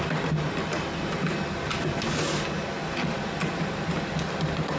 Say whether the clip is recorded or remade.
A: recorded